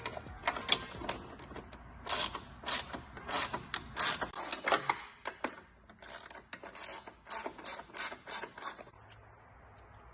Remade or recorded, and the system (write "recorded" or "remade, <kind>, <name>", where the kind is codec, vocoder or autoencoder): recorded